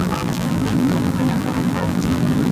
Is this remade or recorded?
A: remade